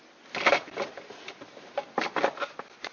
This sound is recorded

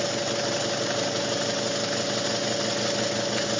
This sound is recorded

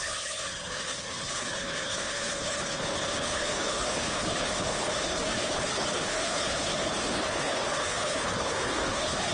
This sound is remade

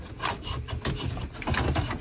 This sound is recorded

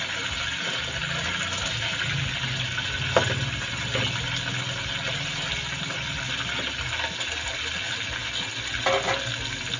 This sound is recorded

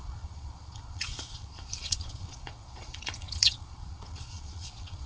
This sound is remade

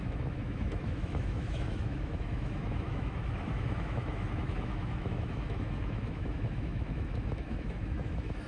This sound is remade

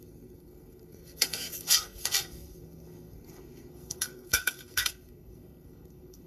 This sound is remade